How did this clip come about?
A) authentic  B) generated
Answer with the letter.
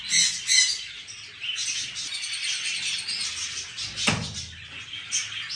A